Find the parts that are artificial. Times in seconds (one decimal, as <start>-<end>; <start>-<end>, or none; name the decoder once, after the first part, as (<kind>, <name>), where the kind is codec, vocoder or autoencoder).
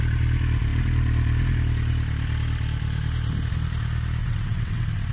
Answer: 4.2-5.1 (vocoder, WaveNeXt)